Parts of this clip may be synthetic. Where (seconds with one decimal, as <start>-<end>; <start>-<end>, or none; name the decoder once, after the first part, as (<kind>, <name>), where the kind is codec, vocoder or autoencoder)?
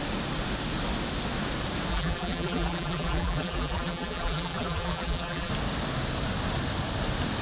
1.9-5.5 (vocoder, BigVGAN v2)